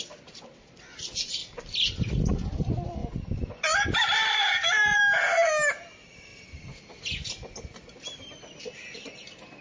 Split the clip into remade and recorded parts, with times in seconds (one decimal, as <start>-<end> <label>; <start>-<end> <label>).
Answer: 0.0-4.4 recorded; 4.4-5.0 remade; 5.0-9.6 recorded